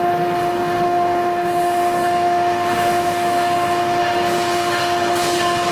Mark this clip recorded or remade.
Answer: remade